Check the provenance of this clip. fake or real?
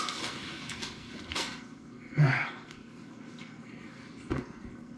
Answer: fake